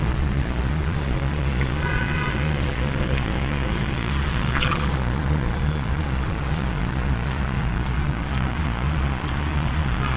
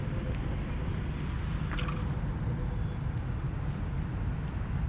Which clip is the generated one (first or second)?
first